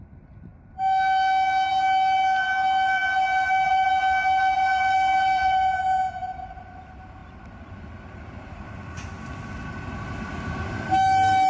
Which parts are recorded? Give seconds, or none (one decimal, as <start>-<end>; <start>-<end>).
0.0-11.5